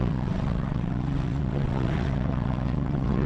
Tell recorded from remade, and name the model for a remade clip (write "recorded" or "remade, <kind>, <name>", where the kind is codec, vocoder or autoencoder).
remade, vocoder, WaveNeXt